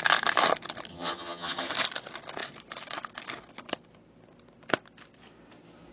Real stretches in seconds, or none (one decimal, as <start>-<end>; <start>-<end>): 0.0-0.9; 1.7-5.9